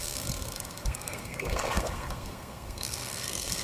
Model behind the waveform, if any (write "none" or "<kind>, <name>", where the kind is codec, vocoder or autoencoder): codec, SNAC